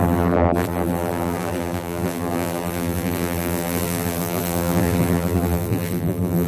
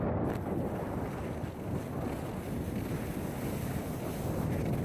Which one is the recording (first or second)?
second